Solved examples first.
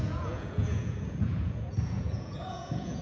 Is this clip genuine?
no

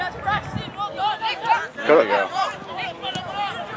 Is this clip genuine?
yes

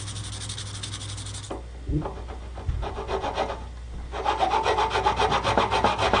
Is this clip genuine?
yes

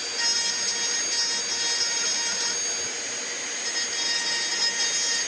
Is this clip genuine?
yes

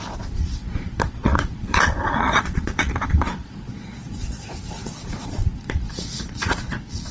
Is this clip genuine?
no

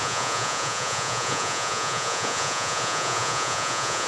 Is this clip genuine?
no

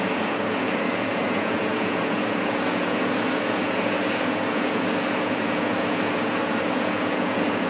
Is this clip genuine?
no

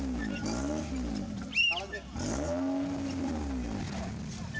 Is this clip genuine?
yes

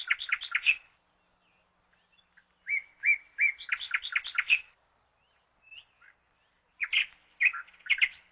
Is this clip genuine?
yes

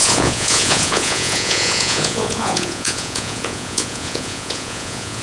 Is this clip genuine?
no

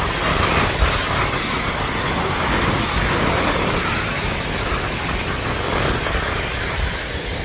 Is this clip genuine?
yes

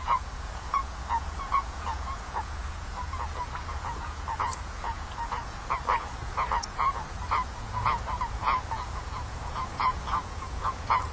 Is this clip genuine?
no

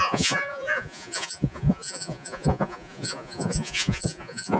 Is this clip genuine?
no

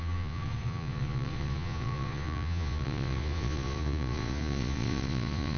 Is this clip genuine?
no